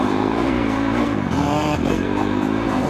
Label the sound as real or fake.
fake